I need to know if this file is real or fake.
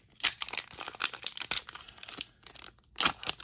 real